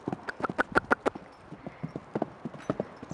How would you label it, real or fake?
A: real